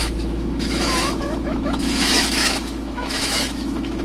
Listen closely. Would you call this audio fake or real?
fake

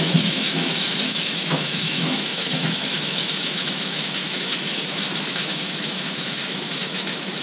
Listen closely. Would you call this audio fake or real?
fake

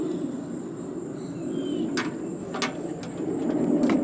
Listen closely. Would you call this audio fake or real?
real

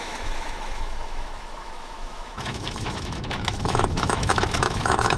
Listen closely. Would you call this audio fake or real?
fake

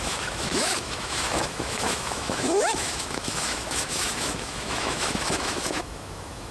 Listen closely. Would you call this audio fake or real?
fake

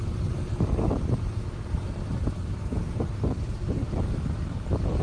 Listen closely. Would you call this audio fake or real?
real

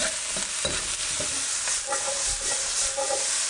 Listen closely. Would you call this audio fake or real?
real